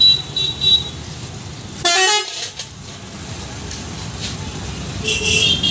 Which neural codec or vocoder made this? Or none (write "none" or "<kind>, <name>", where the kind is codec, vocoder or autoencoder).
none